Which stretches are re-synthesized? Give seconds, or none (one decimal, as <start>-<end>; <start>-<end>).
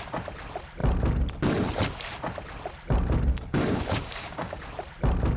3.3-4.6